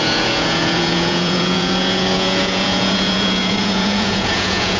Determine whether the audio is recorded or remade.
remade